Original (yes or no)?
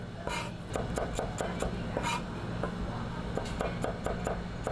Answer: yes